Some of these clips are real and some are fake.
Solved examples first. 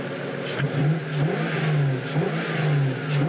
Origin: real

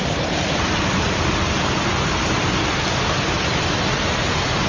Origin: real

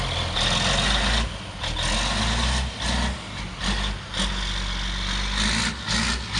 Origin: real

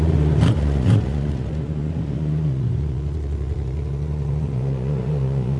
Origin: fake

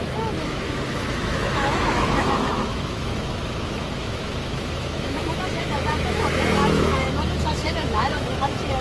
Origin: fake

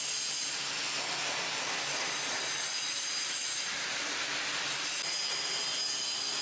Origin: real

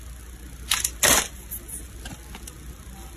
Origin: real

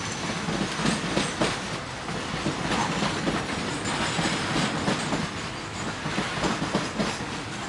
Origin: real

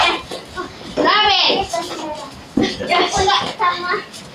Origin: real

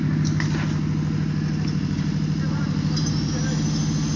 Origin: real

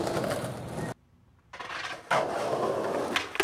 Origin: real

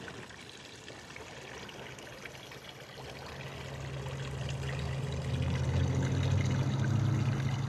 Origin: real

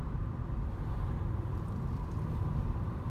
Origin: fake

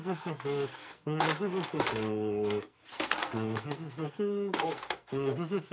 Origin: fake